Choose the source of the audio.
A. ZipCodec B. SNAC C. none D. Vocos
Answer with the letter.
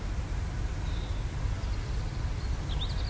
C